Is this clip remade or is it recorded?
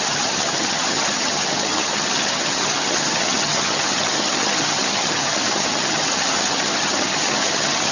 remade